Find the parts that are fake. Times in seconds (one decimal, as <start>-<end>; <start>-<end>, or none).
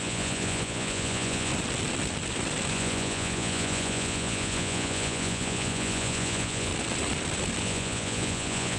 0.0-1.5; 2.7-6.7; 7.6-8.8